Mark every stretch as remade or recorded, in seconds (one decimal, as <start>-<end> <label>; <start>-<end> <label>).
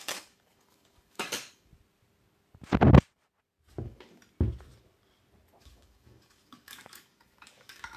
0.0-1.7 remade; 1.7-3.8 recorded; 3.8-4.2 remade; 4.2-5.6 recorded; 5.6-8.0 remade